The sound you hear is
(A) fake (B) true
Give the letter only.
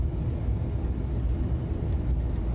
B